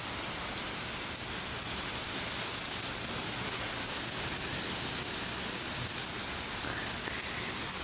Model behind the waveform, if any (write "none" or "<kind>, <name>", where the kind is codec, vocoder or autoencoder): none